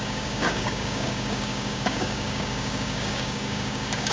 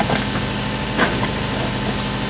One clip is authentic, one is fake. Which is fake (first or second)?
first